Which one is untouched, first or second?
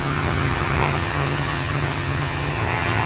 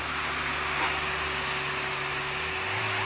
second